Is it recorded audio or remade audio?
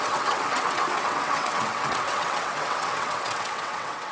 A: remade